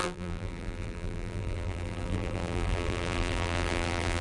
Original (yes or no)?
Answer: no